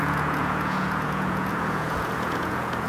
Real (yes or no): no